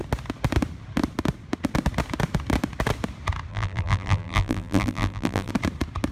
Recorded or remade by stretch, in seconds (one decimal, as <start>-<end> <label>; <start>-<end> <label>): 0.0-3.5 recorded; 3.5-5.5 remade; 5.5-6.1 recorded